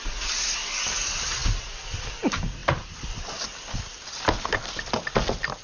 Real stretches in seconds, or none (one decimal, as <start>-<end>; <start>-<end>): 0.0-5.6